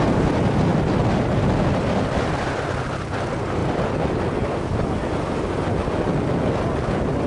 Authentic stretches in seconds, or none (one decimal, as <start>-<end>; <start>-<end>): 0.0-7.3